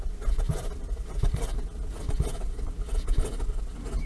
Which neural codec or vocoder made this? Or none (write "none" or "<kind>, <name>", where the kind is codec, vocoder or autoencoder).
none